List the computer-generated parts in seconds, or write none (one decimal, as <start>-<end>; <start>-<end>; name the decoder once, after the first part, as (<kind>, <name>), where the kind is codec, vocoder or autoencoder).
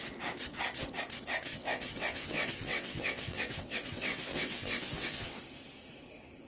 1.5-5.4 (vocoder, WaveNeXt)